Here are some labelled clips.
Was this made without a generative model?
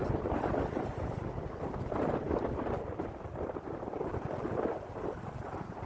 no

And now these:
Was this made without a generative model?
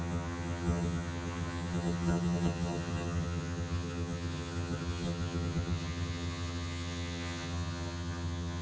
no